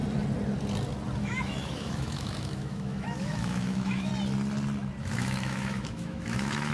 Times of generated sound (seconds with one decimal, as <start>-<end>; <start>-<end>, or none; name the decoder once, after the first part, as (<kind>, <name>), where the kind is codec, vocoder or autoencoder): 1.2-4.1 (autoencoder, DAC-VAE); 5.0-6.7